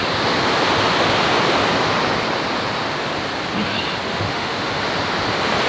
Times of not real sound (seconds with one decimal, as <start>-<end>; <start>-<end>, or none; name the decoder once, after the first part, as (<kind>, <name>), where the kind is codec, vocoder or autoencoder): 4.1-4.8 (autoencoder, DAC-VAE)